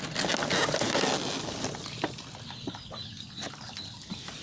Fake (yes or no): no